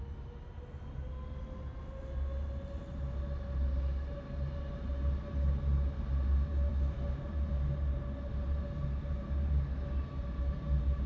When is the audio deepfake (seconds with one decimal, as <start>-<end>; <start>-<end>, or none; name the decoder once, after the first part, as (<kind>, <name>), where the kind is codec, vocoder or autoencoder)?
none